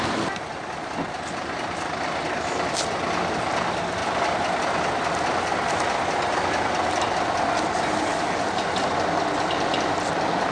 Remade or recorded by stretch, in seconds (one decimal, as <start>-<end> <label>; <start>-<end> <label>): 0.0-10.5 recorded